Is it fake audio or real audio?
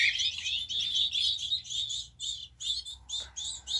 real